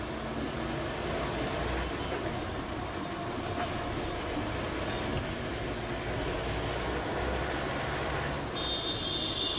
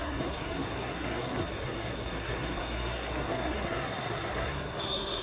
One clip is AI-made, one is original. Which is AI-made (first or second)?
second